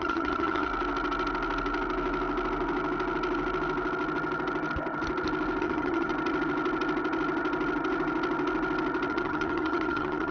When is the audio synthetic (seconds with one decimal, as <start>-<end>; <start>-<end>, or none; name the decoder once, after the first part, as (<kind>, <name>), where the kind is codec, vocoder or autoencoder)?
0.0-0.7 (vocoder, HiFi-GAN); 5.6-6.1; 9.1-10.3